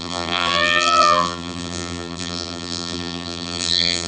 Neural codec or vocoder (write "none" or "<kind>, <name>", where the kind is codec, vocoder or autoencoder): vocoder, BigVGAN v2